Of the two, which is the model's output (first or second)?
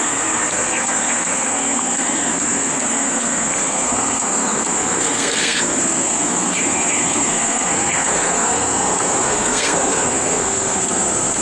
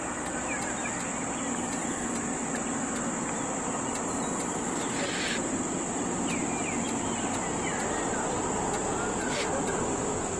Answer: first